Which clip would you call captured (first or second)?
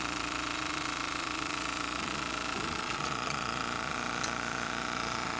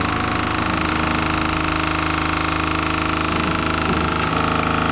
second